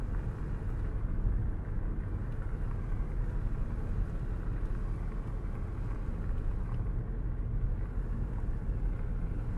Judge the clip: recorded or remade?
recorded